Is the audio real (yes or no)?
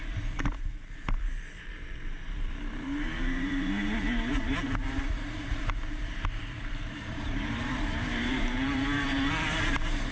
no